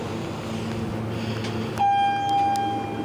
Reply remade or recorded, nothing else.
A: recorded